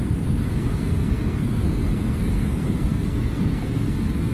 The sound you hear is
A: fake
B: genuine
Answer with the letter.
A